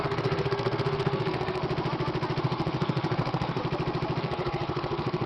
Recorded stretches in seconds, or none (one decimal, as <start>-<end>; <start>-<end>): 1.6-2.4; 3.6-4.2